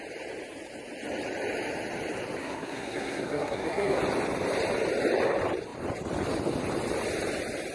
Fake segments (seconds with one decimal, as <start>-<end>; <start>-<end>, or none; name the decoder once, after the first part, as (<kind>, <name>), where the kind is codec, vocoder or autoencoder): 2.4-4.0 (codec, SNAC)